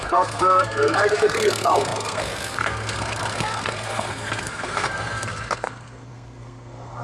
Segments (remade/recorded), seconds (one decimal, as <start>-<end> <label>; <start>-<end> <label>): 0.0-7.0 remade